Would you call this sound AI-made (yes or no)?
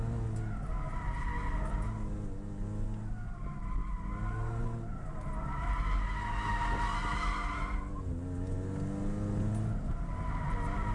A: no